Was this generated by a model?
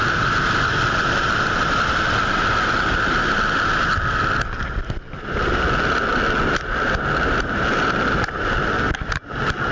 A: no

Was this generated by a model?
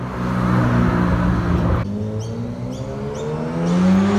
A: no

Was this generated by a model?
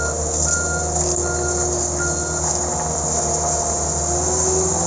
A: no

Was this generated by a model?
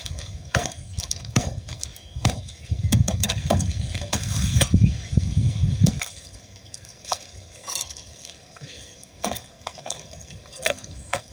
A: yes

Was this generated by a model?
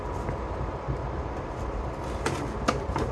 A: no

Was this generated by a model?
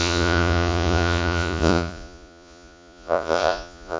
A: yes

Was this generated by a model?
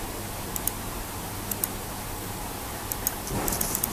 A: no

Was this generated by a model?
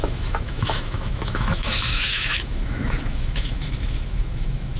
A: yes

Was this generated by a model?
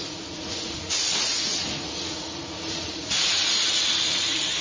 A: yes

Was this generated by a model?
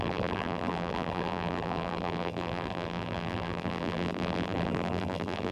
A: yes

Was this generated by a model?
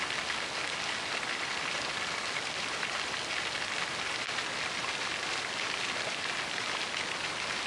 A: no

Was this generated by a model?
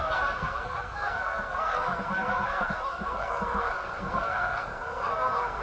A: yes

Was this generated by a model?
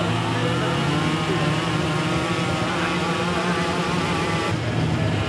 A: no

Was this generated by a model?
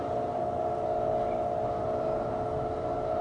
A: no